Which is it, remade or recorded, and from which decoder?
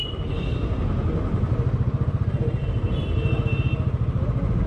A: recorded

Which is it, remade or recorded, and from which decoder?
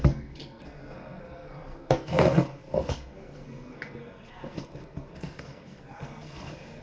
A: remade, codec, SNAC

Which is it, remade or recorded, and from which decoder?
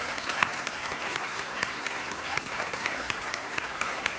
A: remade, codec, SNAC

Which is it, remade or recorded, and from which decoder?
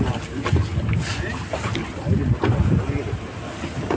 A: recorded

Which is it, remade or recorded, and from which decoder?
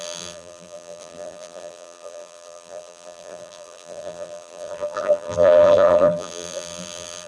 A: remade, vocoder, BigVGAN v2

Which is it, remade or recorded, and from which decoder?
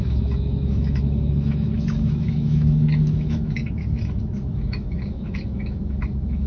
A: remade, autoencoder, DAC-VAE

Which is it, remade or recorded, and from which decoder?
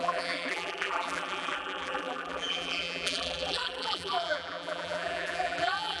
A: remade, vocoder, BigVGAN v2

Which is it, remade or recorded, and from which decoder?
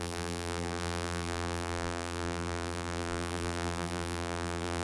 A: remade, vocoder, BigVGAN v2